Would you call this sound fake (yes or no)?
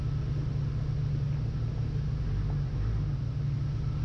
no